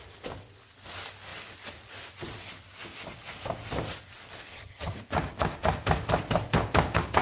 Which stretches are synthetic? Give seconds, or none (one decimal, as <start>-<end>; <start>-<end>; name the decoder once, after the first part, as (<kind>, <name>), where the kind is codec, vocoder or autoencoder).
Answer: 4.5-5.0 (vocoder, HiFi-GAN)